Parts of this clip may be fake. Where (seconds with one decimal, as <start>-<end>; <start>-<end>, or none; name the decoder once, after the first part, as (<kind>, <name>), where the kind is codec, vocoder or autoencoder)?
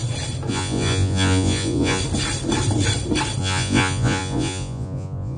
0.5-2.0 (vocoder, Vocos); 3.4-5.4